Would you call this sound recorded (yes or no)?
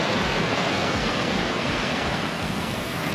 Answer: no